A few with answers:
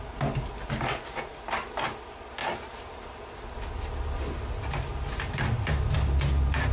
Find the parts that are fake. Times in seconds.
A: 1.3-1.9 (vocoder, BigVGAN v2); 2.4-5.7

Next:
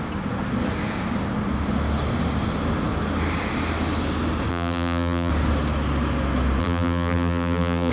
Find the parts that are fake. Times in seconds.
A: 4.5-5.3 (vocoder, BigVGAN v2); 6.6-7.9

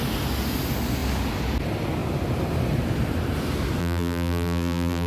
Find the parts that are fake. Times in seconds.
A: 3.8-5.1 (vocoder, BigVGAN v2)